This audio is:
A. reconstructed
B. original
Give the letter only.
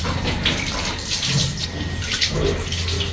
B